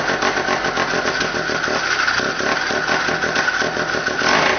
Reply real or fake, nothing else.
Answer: real